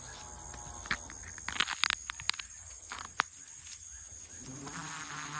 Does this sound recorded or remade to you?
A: recorded